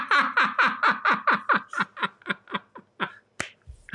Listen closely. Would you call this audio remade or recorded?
recorded